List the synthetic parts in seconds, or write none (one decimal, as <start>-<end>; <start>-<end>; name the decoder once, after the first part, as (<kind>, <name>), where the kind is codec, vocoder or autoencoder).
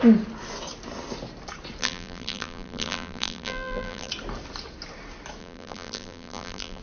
1.8-4.1 (vocoder, BigVGAN v2); 5.4-6.8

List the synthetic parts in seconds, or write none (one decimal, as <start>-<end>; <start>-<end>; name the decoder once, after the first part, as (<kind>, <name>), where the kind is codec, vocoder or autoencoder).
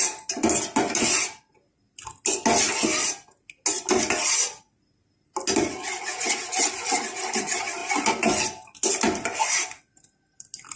none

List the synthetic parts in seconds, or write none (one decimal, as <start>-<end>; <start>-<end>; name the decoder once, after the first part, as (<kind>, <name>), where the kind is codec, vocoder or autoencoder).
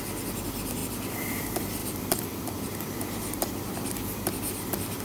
1.8-5.0 (vocoder, BigVGAN v2)